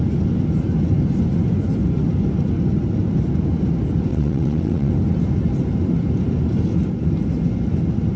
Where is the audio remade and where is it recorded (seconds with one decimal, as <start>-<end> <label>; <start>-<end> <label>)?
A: 0.0-4.1 recorded; 4.1-4.9 remade; 4.9-8.2 recorded